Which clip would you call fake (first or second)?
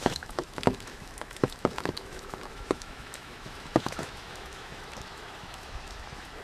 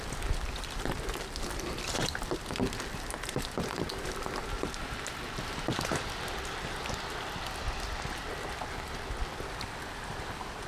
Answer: first